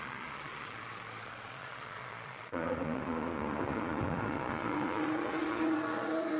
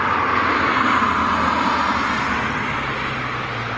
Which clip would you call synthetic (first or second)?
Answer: first